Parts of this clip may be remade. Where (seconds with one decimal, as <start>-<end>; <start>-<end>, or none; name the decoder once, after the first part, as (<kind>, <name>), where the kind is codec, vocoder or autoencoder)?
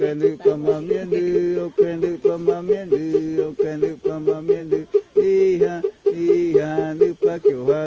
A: none